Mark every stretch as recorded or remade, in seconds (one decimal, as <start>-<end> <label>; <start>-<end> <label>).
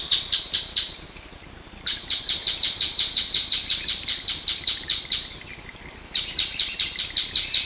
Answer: 0.0-7.6 recorded